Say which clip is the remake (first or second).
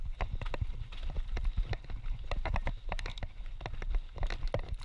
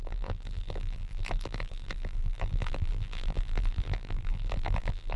second